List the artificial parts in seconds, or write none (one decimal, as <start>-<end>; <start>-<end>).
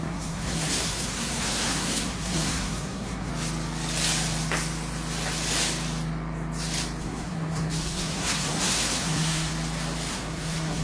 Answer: 0.0-3.3; 7.0-9.5; 10.1-10.8